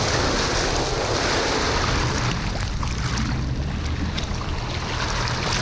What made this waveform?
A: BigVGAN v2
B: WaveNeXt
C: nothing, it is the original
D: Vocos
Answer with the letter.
C